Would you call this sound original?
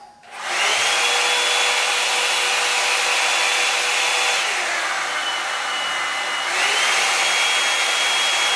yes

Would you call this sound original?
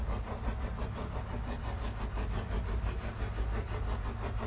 yes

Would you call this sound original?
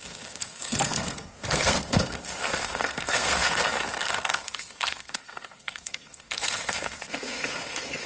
no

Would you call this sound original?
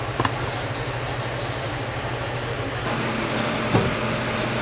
yes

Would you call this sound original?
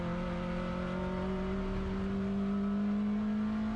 yes